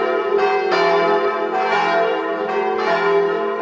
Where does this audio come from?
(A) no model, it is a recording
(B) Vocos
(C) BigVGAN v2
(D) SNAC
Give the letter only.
A